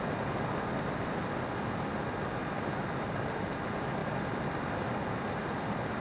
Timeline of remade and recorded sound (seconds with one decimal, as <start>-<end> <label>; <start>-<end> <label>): 0.0-6.0 recorded